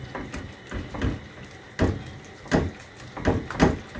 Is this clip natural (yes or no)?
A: yes